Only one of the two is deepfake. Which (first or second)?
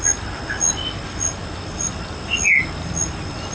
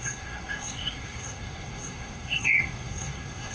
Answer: second